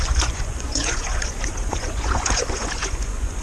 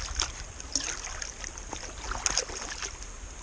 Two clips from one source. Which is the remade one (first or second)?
first